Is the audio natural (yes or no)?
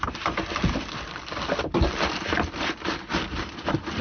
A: no